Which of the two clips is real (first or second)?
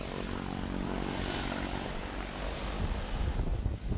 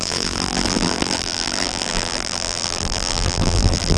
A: first